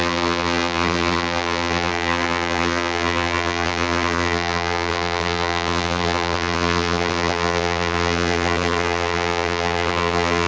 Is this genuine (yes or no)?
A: no